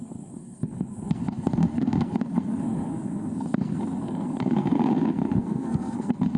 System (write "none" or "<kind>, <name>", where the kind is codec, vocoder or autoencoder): codec, SNAC